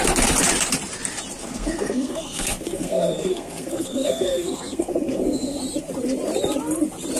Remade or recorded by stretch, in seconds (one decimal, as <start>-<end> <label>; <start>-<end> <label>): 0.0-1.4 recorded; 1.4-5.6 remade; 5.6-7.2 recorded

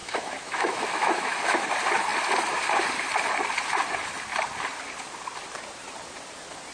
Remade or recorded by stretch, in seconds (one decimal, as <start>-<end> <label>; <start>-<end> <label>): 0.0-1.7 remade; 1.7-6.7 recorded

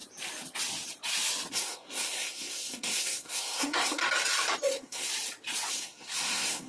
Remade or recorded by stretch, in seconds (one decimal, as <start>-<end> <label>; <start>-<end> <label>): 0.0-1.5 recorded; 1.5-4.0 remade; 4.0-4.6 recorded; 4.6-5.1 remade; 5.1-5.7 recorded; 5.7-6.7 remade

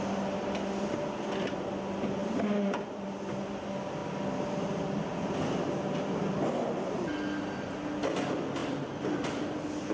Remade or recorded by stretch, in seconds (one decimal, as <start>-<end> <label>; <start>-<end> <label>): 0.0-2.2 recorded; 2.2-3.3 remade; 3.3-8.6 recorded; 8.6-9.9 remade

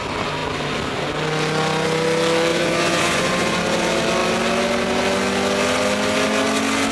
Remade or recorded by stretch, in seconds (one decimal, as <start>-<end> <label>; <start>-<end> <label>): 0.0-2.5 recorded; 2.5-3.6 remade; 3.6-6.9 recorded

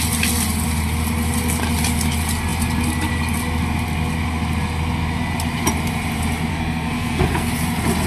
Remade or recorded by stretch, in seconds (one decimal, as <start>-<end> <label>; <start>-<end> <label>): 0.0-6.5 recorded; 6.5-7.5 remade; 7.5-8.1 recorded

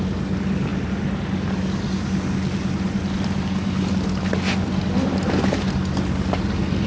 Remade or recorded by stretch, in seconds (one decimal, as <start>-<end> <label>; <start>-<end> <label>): 0.0-6.9 recorded